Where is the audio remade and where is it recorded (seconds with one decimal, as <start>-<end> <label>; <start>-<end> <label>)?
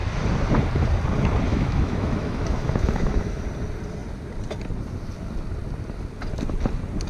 0.0-1.5 recorded; 1.5-3.4 remade; 3.4-7.1 recorded